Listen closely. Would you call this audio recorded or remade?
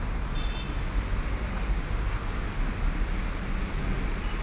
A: recorded